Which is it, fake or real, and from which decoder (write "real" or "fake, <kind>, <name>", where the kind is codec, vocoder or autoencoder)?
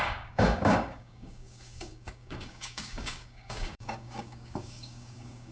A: fake, codec, DAC